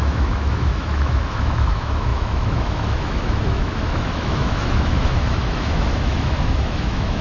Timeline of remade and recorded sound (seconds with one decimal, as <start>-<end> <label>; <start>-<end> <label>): 0.0-7.2 remade